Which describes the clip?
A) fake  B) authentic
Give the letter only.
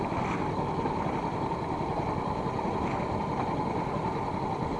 B